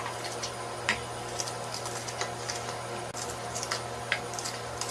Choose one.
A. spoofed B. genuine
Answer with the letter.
B